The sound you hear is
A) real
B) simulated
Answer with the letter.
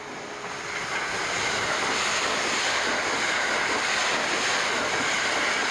A